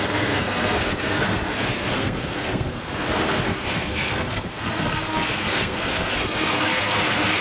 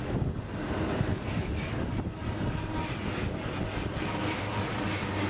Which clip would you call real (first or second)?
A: second